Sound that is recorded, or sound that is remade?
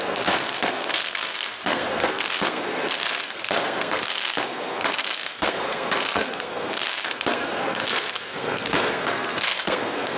remade